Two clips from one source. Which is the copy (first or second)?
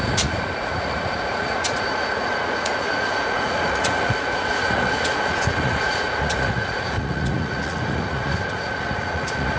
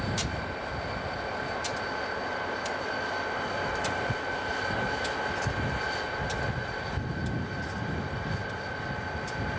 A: first